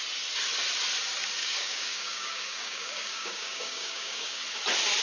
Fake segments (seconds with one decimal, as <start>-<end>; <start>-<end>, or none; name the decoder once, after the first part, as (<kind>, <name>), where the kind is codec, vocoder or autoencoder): 1.4-4.4 (codec, DAC)

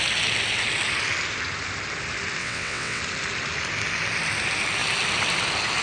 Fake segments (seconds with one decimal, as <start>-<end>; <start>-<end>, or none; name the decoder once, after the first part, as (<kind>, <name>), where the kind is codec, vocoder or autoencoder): 2.4-3.0 (vocoder, WaveNeXt)

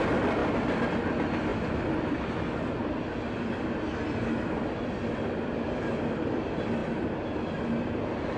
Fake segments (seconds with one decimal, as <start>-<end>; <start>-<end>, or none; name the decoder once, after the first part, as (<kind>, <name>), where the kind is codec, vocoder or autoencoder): none